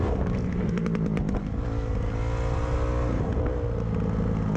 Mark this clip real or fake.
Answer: real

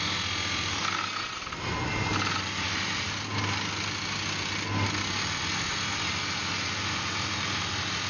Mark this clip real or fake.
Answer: real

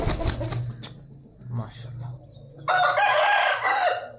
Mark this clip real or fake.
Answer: real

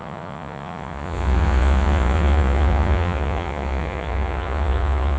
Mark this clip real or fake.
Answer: fake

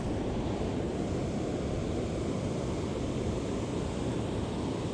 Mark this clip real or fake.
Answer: real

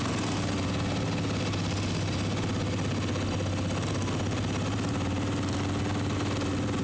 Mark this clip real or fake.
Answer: real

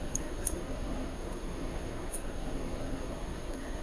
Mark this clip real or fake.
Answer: fake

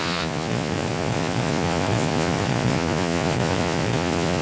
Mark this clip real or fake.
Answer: fake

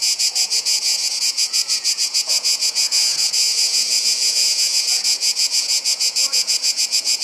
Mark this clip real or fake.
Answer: fake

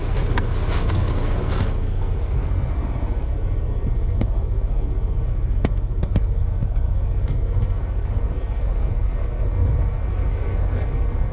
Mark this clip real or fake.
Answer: fake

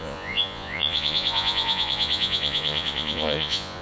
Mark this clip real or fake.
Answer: fake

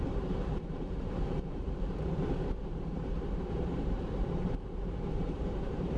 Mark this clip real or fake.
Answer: fake